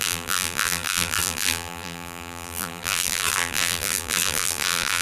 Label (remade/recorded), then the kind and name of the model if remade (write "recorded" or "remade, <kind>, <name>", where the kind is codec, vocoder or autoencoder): remade, vocoder, BigVGAN v2